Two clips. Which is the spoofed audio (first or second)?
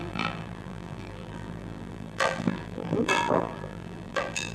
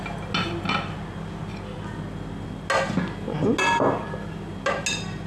first